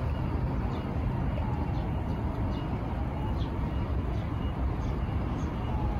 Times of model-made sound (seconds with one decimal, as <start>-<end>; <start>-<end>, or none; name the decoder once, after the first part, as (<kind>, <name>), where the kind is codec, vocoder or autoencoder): none